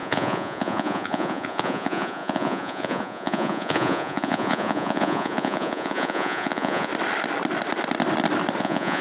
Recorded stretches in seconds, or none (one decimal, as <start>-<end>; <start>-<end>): 6.9-8.6